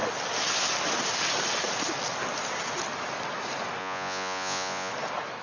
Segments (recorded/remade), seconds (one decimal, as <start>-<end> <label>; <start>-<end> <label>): 0.0-3.8 recorded; 3.8-4.9 remade; 4.9-5.4 recorded